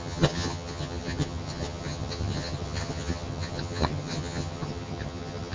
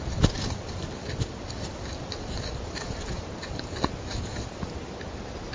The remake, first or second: first